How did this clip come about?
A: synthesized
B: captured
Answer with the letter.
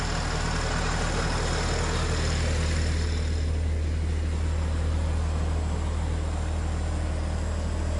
B